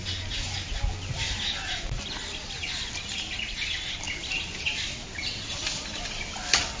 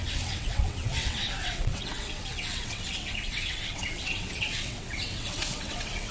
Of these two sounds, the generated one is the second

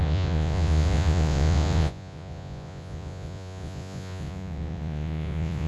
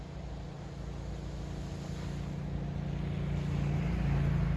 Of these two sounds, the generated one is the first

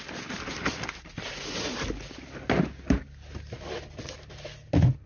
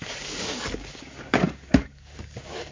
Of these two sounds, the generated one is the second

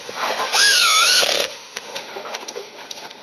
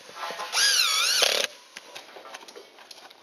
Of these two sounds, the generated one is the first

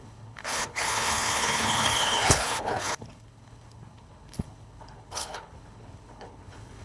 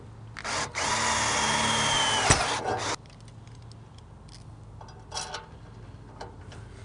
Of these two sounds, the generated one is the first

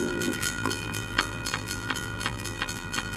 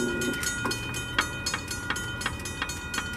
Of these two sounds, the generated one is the first